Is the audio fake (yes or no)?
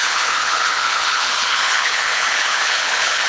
yes